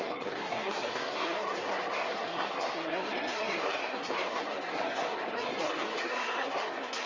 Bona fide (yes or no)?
no